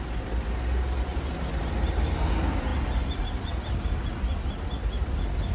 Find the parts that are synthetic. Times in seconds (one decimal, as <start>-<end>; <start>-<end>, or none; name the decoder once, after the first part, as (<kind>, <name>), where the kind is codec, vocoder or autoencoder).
none